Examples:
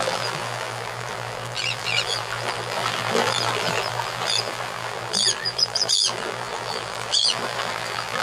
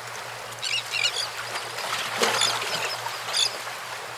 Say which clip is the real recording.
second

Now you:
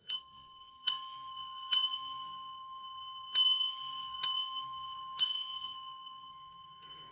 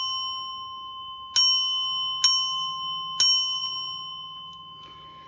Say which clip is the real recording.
second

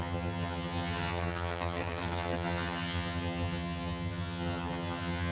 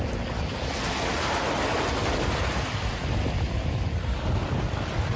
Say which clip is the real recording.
second